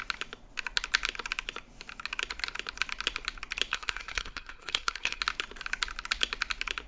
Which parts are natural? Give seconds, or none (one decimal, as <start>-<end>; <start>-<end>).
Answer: 0.0-3.7; 5.2-6.9